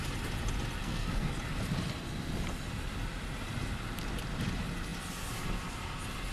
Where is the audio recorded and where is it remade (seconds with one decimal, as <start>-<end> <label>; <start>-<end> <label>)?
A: 0.0-0.8 recorded; 0.8-1.3 remade; 1.3-6.3 recorded